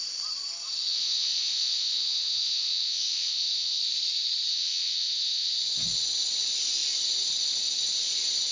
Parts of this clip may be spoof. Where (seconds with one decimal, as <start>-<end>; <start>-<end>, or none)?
0.9-3.8; 4.5-5.5